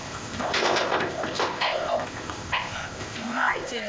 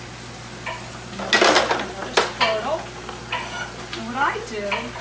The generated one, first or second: first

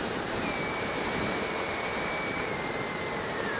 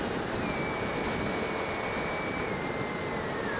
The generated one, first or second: first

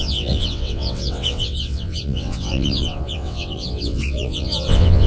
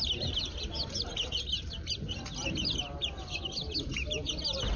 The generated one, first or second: first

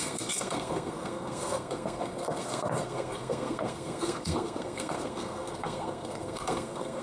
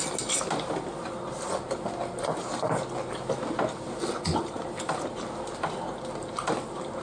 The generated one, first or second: first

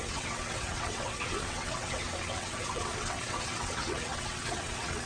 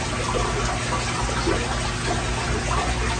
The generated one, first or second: first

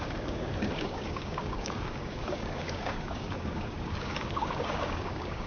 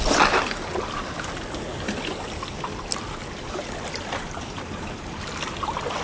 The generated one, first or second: first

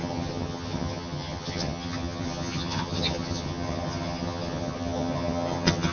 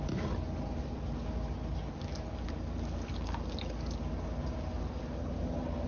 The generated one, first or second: first